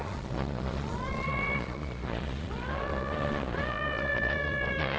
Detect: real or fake fake